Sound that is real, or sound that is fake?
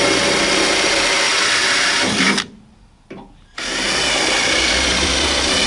real